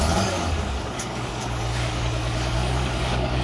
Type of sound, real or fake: fake